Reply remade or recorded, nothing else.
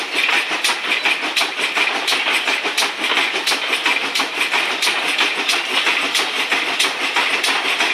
recorded